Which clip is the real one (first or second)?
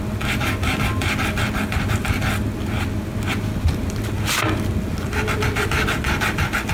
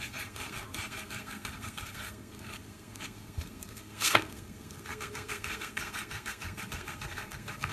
first